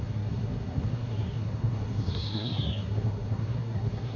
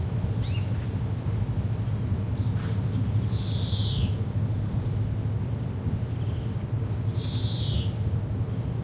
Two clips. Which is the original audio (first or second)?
second